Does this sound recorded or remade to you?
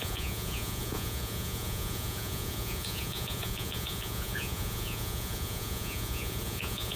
remade